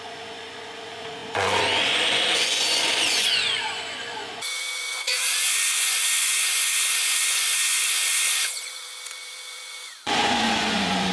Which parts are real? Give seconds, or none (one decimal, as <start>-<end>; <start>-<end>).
none